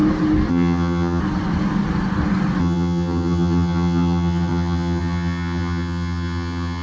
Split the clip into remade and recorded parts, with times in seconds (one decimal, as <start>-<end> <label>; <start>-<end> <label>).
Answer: 0.0-0.5 recorded; 0.5-1.2 remade; 1.2-2.6 recorded; 2.6-6.8 remade